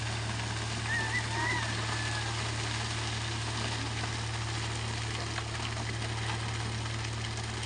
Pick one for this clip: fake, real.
real